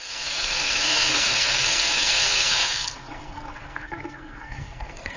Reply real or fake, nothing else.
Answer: fake